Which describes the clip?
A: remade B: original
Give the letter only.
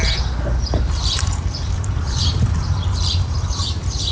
A